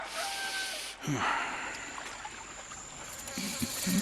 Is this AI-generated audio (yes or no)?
no